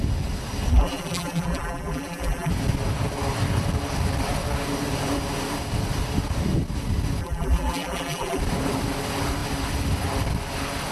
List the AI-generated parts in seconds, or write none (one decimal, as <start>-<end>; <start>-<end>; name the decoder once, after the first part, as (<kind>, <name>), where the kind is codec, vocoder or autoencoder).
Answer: 0.7-2.5 (vocoder, BigVGAN v2); 7.2-8.4